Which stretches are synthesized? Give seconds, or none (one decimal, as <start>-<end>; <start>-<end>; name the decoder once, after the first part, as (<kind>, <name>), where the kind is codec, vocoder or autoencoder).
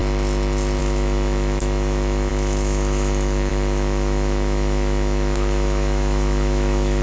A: 0.8-7.0 (autoencoder, DAC-VAE)